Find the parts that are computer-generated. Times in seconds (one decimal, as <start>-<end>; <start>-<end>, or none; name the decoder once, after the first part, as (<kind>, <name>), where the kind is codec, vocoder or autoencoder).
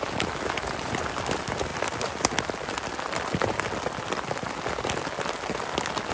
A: none